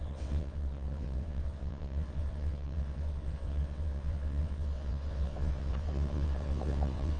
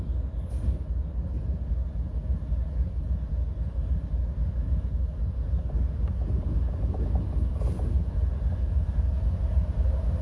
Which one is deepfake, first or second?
first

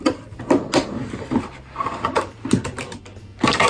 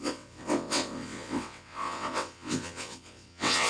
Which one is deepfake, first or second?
second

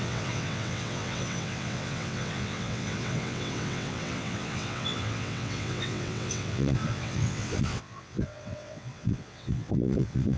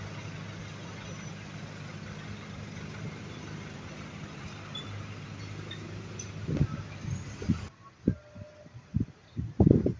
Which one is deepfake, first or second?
first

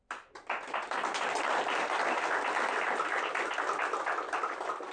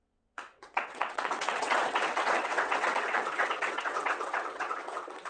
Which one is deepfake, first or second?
second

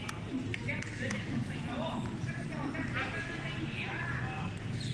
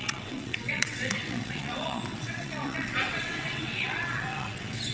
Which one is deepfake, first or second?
second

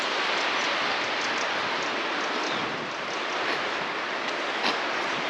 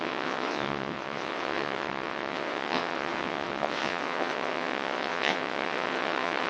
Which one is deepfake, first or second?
second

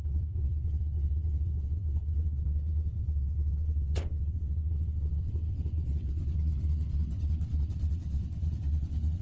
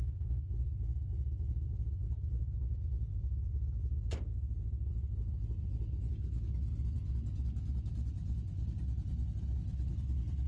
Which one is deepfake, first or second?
first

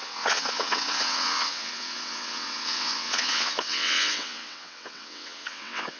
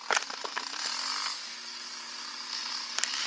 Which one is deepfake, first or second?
first